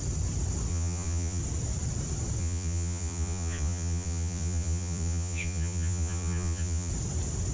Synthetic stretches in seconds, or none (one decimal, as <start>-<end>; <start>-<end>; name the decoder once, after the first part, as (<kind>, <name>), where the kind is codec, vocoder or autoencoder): 0.7-1.4 (vocoder, Vocos); 2.4-6.9